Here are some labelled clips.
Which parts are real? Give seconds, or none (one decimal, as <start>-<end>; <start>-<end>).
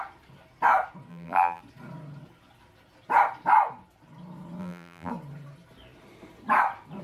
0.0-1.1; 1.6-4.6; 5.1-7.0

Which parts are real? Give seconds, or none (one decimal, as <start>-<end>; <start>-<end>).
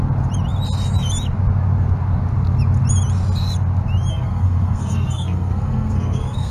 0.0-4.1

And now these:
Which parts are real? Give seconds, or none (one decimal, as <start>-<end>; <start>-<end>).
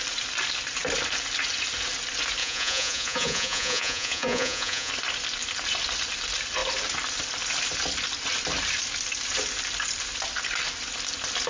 0.0-2.4; 4.9-11.5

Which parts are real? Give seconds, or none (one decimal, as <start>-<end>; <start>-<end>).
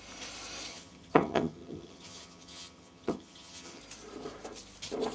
0.0-0.7; 3.8-5.1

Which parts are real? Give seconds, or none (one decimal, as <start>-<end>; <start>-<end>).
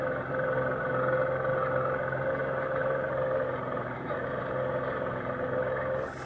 0.0-2.8; 4.4-6.3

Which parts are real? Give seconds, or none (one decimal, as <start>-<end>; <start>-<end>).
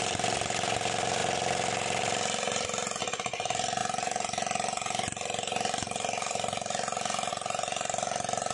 0.0-8.5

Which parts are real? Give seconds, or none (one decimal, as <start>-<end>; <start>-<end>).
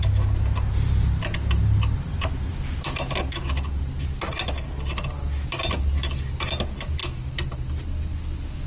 0.0-8.7